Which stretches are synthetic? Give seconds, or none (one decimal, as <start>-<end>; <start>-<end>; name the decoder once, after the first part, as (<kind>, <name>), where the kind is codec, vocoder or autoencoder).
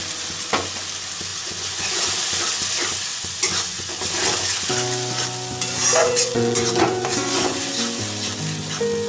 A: 1.3-2.1 (vocoder, Vocos); 3.1-3.9; 6.0-7.7